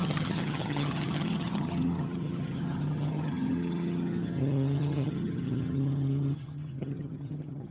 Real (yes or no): no